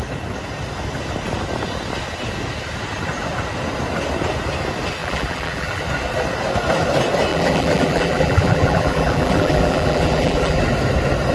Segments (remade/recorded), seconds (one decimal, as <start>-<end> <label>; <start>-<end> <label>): 0.0-5.0 recorded; 5.0-5.8 remade; 5.8-7.3 recorded; 7.3-10.6 remade; 10.6-11.3 recorded